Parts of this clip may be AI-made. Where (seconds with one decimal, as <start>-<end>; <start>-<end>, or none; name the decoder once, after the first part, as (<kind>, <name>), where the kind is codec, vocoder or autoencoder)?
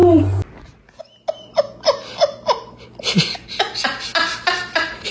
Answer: none